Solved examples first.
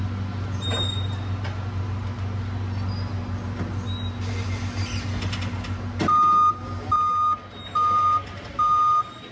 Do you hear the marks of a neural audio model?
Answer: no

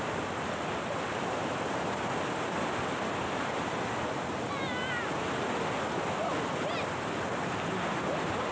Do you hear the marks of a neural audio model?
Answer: no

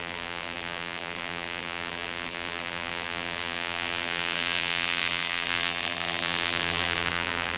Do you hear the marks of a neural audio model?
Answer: yes